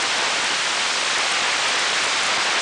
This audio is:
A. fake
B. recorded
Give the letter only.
B